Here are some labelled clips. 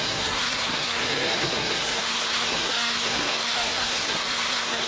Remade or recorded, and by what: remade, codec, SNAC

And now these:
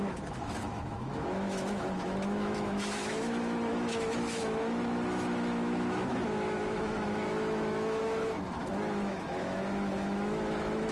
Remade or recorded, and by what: remade, autoencoder, DAC-VAE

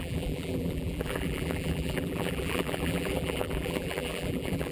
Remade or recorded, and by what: remade, vocoder, BigVGAN v2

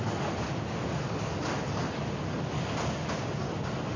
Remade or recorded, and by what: recorded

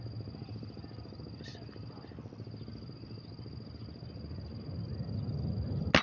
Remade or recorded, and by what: recorded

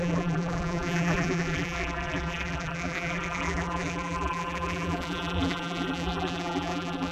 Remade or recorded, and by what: remade, vocoder, BigVGAN v2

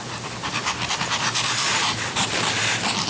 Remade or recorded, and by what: remade, vocoder, BigVGAN v2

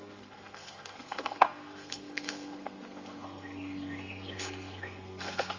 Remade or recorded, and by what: remade, codec, SNAC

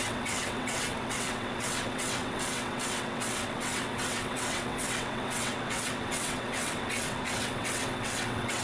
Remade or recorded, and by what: remade, vocoder, WaveNeXt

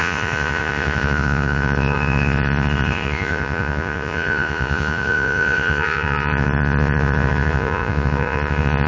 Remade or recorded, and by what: remade, vocoder, Vocos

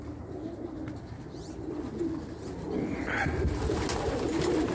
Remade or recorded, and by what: recorded